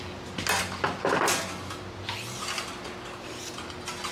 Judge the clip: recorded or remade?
recorded